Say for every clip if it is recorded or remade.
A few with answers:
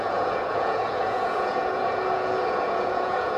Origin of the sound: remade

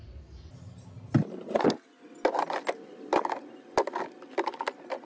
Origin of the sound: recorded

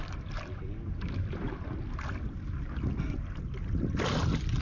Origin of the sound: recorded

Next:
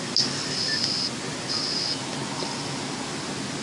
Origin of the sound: recorded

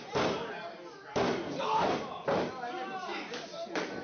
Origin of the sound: recorded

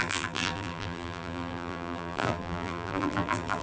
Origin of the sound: remade